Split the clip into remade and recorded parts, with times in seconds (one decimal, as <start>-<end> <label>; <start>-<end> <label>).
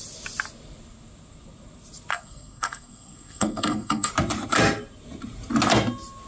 0.0-2.1 recorded; 2.1-4.1 remade; 4.1-6.3 recorded